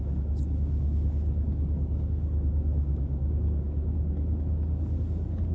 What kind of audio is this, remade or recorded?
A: remade